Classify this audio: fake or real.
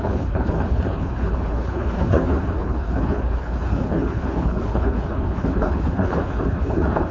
fake